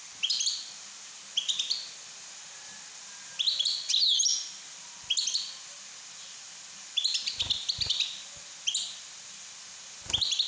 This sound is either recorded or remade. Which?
recorded